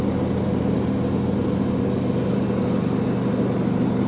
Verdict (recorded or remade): recorded